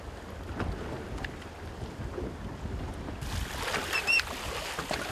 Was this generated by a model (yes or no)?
no